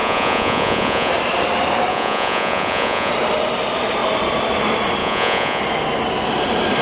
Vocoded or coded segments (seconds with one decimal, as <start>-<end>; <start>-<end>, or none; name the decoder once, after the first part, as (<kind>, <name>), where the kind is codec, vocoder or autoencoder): 0.0-1.1 (vocoder, Vocos); 1.9-3.1; 5.0-5.6